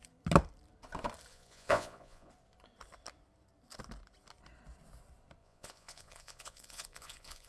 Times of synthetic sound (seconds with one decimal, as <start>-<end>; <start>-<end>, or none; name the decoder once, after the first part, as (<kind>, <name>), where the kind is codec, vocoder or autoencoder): 1.3-2.3 (vocoder, Vocos); 5.4-7.5